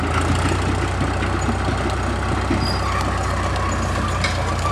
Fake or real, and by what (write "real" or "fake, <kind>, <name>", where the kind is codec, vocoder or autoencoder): real